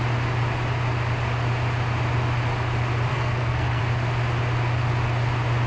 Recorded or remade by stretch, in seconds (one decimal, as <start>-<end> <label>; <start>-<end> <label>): 0.0-3.1 recorded; 3.1-3.8 remade; 3.8-5.7 recorded